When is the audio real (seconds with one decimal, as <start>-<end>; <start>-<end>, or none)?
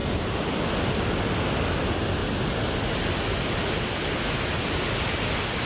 0.6-5.7